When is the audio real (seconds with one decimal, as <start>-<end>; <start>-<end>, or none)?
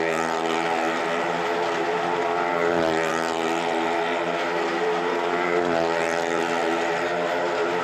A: 0.0-7.8